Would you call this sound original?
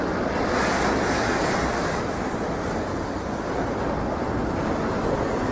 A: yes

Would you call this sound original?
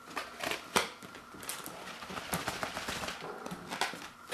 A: yes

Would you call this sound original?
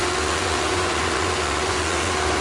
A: no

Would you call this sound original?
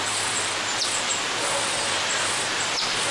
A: yes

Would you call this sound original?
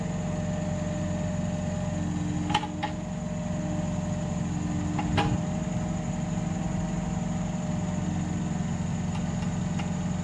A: yes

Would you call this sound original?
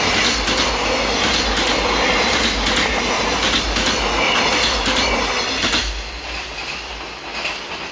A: yes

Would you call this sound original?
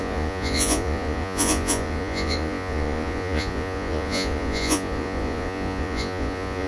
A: no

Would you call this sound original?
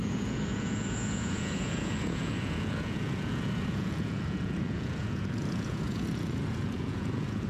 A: no